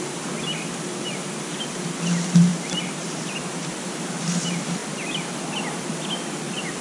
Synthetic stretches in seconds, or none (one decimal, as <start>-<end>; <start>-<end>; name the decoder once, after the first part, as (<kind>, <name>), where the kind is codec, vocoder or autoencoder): 2.5-3.7 (vocoder, BigVGAN v2)